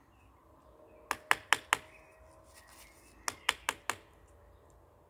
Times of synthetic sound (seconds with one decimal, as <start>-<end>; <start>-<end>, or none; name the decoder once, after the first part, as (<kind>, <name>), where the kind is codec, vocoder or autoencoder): none